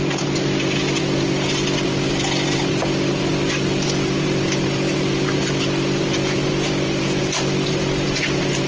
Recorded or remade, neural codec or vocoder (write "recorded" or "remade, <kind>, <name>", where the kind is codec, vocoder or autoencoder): recorded